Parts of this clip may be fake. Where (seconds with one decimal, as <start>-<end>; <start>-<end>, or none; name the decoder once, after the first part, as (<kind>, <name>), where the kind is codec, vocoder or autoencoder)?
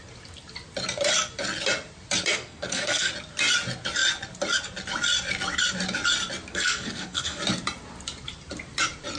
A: 2.3-3.1 (codec, SNAC); 6.5-7.4